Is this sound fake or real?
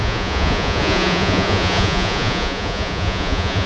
fake